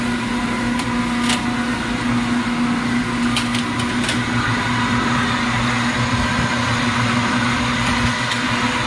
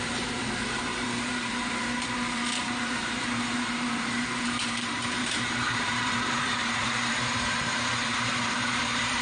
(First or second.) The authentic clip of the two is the first